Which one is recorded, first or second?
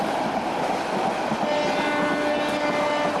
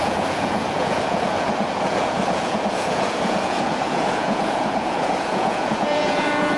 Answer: first